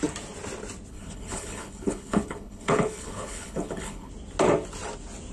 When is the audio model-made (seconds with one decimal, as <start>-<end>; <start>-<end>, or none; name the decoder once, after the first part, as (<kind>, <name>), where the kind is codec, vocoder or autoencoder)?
0.9-4.1 (codec, HILCodec)